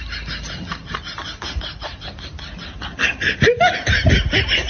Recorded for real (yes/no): yes